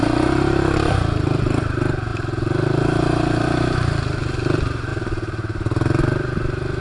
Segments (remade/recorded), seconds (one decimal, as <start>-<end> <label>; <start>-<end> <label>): 0.0-6.8 recorded